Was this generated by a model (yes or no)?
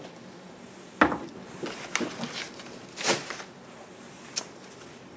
no